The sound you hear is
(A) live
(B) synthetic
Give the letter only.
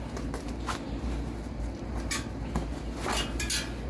A